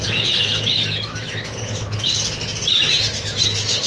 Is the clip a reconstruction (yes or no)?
yes